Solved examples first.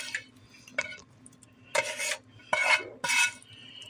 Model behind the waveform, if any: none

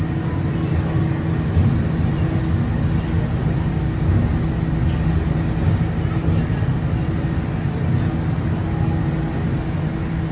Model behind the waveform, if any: none